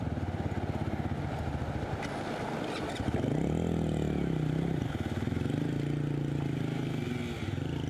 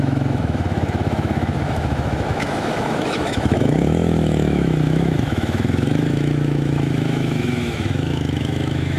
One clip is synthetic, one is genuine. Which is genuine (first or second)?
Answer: first